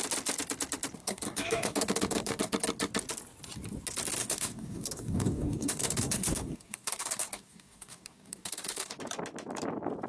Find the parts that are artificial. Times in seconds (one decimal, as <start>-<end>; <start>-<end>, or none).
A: 1.0-2.4; 4.2-9.0